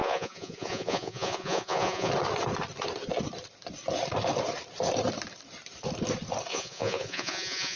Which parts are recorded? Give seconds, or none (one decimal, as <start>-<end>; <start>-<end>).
2.1-6.5